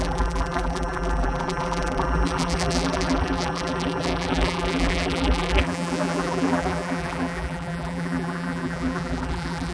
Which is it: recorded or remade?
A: remade